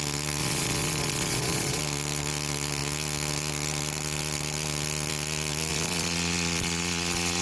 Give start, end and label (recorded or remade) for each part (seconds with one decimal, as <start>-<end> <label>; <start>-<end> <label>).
0.0-0.4 recorded; 0.4-1.8 remade; 1.8-5.7 recorded; 5.7-7.4 remade